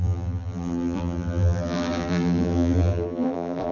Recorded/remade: remade